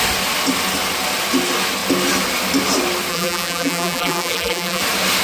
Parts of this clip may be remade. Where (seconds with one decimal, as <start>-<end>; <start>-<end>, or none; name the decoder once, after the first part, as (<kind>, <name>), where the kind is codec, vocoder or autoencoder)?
3.1-4.8 (vocoder, BigVGAN v2)